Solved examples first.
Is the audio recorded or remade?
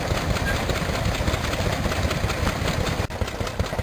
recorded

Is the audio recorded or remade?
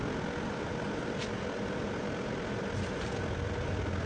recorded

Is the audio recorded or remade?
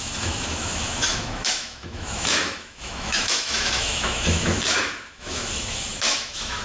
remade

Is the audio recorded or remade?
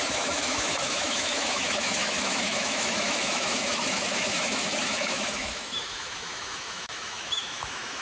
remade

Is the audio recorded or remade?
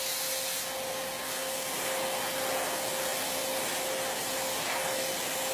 recorded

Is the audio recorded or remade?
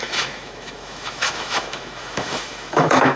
remade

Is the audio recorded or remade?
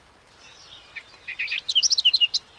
recorded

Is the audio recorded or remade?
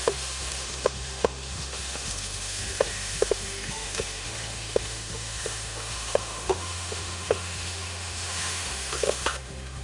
remade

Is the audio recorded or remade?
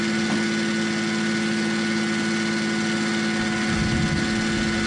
recorded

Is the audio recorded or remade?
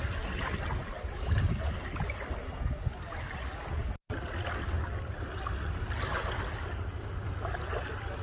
recorded